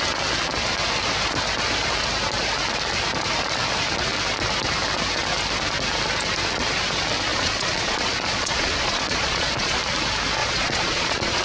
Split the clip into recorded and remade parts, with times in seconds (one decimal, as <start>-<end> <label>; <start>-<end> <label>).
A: 0.0-7.3 recorded; 7.3-9.8 remade; 9.8-10.4 recorded; 10.4-11.4 remade